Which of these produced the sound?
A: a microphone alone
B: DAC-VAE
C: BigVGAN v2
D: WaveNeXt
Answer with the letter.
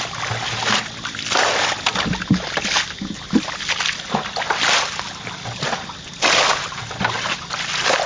A